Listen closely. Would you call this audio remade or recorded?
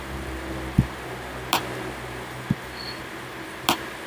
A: recorded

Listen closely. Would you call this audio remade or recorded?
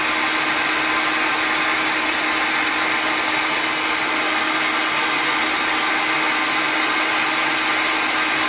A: recorded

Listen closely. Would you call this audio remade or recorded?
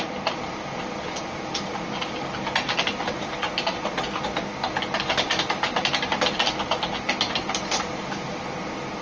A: recorded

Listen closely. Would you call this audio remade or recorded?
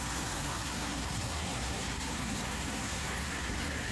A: remade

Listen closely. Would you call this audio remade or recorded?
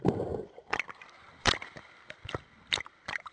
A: remade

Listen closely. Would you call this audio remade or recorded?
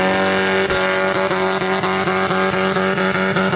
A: recorded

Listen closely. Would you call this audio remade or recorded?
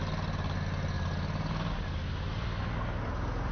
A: recorded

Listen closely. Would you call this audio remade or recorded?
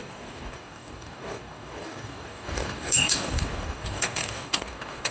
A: remade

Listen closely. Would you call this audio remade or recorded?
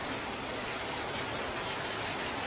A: recorded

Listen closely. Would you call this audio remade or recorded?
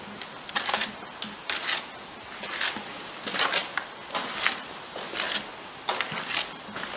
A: recorded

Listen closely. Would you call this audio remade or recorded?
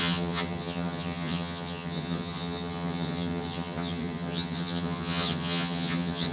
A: remade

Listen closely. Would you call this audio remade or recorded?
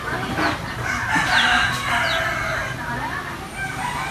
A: recorded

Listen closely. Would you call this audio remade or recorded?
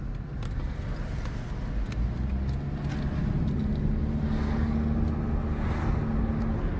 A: recorded